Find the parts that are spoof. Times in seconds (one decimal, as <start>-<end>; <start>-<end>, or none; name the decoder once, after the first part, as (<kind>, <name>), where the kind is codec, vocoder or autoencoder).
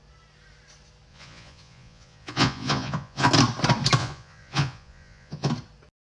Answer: 1.1-3.3 (vocoder, Vocos); 4.0-5.5